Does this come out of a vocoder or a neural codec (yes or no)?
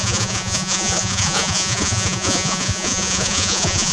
yes